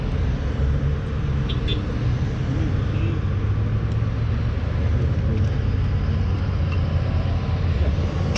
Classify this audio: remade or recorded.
recorded